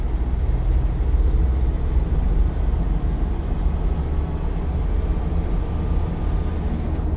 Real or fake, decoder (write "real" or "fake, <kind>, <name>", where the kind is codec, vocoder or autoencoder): real